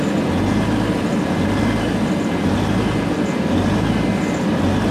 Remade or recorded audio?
recorded